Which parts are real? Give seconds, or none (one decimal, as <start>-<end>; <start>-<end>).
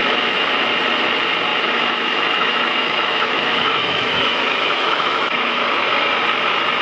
0.5-1.5; 5.6-6.8